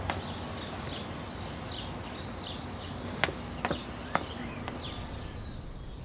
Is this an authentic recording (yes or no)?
yes